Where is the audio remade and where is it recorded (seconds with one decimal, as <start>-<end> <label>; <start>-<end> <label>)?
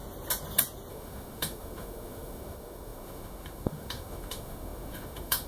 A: 0.0-0.9 recorded; 0.9-5.5 remade